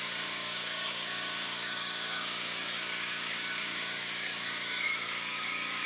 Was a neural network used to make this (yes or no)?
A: yes